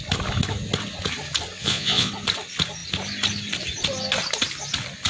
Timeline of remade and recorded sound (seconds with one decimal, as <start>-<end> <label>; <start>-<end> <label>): 0.0-1.6 recorded; 1.6-2.1 remade; 2.1-5.1 recorded